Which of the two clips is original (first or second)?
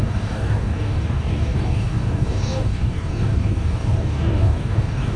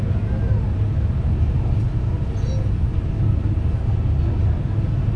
second